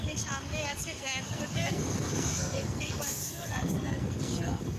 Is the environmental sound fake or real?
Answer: fake